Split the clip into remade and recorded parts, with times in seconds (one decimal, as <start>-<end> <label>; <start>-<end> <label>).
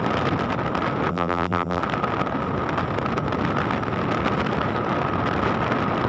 0.0-1.1 recorded; 1.1-1.8 remade; 1.8-6.1 recorded